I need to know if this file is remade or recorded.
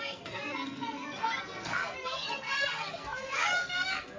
remade